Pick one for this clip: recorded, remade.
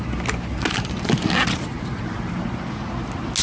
recorded